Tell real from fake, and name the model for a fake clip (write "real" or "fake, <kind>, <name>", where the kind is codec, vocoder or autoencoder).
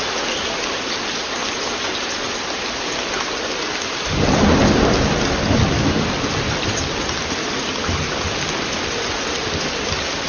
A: real